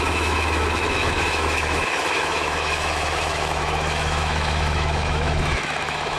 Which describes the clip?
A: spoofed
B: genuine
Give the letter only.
A